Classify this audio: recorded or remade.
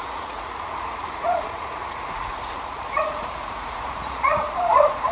remade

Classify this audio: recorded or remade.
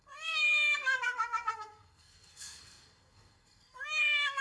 remade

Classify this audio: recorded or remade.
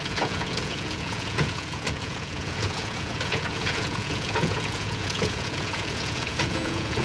remade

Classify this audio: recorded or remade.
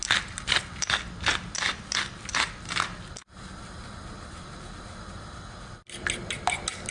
recorded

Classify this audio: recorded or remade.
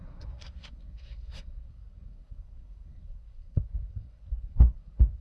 remade